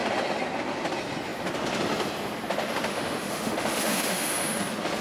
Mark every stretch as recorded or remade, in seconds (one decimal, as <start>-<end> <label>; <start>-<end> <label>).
0.0-2.9 recorded; 2.9-4.6 remade; 4.6-5.0 recorded

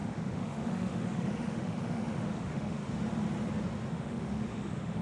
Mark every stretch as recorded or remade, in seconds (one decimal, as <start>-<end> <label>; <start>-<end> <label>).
0.0-2.8 remade; 2.8-3.9 recorded; 3.9-5.0 remade

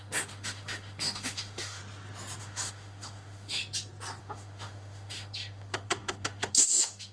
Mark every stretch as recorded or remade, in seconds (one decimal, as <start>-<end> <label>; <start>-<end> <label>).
0.0-1.8 remade; 1.8-2.4 recorded; 2.4-3.6 remade; 3.6-4.2 recorded; 4.2-7.1 remade

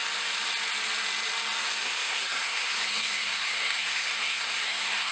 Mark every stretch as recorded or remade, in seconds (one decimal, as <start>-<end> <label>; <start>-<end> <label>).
0.0-1.8 recorded; 1.8-5.1 remade

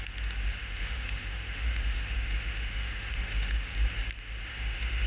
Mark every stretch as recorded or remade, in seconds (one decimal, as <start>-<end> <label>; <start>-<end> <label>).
0.0-0.6 recorded; 0.6-3.7 remade; 3.7-4.5 recorded; 4.5-5.1 remade

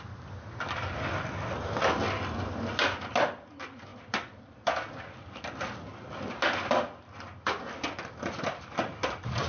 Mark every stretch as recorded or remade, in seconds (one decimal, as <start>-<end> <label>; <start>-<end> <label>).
0.0-9.5 recorded

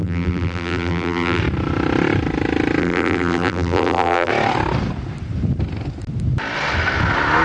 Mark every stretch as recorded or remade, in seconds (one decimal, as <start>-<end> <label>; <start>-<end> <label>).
0.0-1.4 remade; 1.4-2.8 recorded; 2.8-4.3 remade; 4.3-7.4 recorded